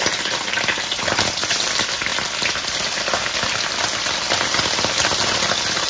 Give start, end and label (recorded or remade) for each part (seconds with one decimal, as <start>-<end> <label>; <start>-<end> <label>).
0.0-5.9 recorded